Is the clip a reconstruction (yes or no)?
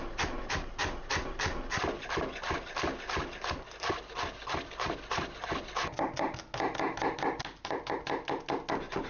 no